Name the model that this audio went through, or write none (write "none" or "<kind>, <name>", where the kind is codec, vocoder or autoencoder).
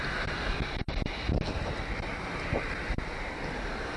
none